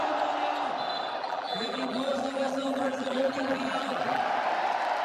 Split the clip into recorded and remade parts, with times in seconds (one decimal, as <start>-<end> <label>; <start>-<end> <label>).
0.0-1.2 recorded; 1.2-4.2 remade; 4.2-5.0 recorded